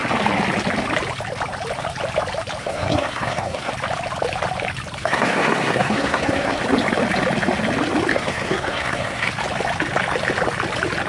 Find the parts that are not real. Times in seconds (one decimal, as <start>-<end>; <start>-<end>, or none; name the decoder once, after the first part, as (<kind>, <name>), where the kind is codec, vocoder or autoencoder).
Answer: 2.6-3.7 (codec, SNAC); 5.0-6.6; 8.1-9.3

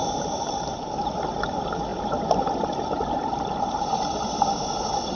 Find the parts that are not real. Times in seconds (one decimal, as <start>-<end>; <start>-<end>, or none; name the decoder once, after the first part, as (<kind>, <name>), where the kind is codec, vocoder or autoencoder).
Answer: 0.0-1.1 (vocoder, BigVGAN v2)

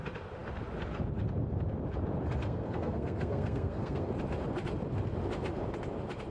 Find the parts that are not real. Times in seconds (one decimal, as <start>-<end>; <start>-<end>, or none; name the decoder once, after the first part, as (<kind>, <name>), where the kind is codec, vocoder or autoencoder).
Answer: 2.4-4.1 (codec, SNAC)

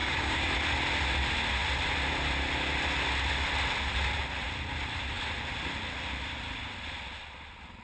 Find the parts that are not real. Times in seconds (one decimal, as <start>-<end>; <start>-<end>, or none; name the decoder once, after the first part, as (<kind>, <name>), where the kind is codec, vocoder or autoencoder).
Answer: 0.0-0.5 (codec, DAC)

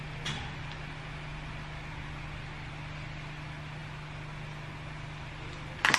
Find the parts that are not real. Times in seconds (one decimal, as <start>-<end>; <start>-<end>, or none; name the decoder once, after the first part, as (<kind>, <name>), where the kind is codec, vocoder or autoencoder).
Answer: none